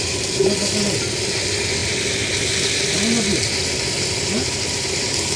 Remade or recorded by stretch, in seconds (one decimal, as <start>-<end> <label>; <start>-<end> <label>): 0.0-5.4 recorded